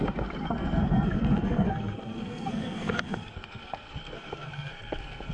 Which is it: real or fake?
fake